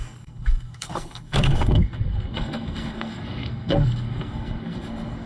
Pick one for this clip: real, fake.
fake